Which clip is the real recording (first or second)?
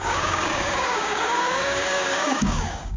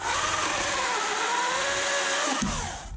second